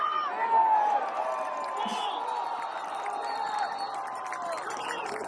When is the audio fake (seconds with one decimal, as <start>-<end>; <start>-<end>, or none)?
none